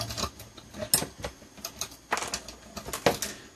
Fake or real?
real